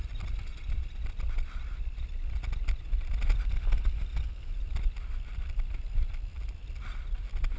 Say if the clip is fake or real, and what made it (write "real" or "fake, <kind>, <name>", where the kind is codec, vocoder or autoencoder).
real